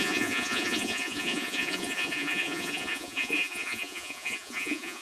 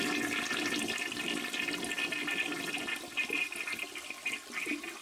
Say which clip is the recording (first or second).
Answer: second